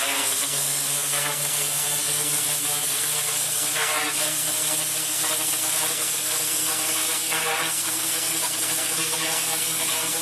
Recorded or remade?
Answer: remade